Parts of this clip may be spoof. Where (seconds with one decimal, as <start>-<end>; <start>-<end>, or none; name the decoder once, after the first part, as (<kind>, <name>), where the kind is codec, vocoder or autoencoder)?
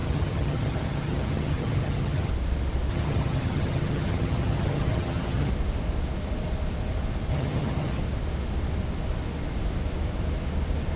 0.0-2.3 (vocoder, HiFi-GAN); 2.9-5.5; 7.3-8.0